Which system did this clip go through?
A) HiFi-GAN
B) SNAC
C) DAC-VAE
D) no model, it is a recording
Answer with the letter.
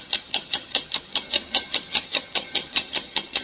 A